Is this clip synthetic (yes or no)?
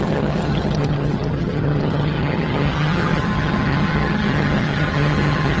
yes